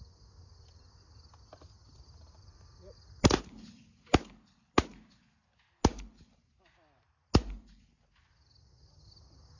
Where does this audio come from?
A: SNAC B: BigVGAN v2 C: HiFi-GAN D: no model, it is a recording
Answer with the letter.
D